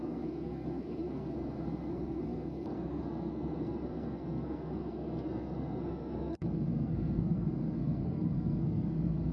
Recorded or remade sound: remade